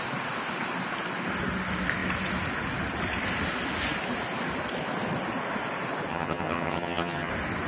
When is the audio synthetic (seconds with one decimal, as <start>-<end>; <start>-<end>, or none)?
6.1-7.3